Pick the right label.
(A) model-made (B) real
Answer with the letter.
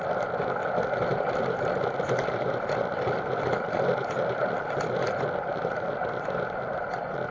A